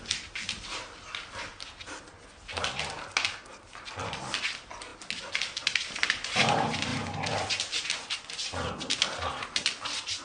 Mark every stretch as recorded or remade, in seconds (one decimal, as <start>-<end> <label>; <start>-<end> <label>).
0.0-10.2 recorded